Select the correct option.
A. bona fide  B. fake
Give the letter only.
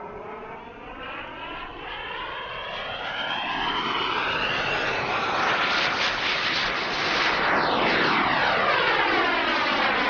A